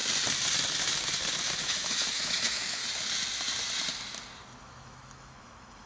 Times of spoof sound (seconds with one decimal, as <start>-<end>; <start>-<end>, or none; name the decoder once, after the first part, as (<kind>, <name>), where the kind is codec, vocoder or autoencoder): 1.6-2.8 (autoencoder, DAC-VAE); 4.6-5.9